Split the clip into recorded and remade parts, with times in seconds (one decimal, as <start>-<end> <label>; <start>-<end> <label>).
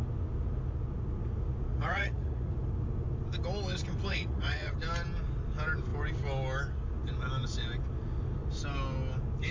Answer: 0.0-1.7 recorded; 1.7-2.5 remade; 2.5-4.1 recorded; 4.1-4.7 remade; 4.7-9.5 recorded